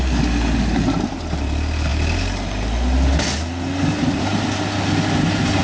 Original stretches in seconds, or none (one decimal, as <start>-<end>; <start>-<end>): 0.0-5.6